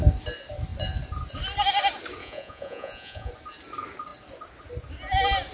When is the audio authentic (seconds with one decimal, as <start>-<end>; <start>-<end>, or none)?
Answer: 0.0-2.2; 3.3-5.5